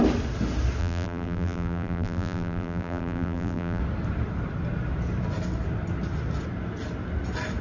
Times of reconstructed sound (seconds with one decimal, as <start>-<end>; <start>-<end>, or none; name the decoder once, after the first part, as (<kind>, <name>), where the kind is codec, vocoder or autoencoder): 0.8-3.8 (vocoder, BigVGAN v2)